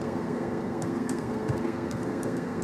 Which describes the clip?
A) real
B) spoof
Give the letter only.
B